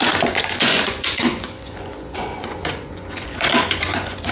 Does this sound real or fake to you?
fake